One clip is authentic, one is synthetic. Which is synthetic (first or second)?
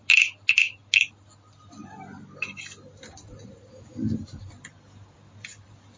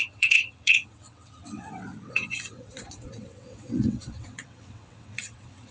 second